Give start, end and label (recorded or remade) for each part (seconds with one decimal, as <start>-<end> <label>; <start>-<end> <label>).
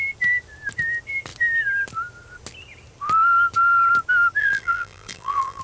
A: 0.0-4.4 recorded; 4.4-5.6 remade